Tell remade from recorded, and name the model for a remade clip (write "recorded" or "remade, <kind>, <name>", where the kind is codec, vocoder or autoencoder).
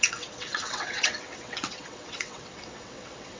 remade, vocoder, WaveNeXt